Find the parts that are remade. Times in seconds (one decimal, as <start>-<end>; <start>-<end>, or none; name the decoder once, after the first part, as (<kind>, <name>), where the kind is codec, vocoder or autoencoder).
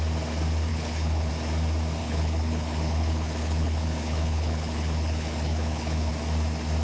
0.7-1.3 (codec, HILCodec); 2.0-6.1